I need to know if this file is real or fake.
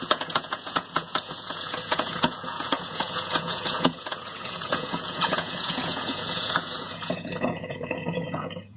fake